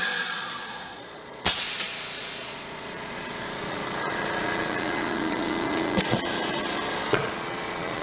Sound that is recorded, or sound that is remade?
remade